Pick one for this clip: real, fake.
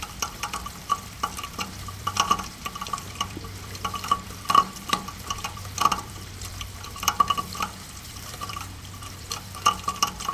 fake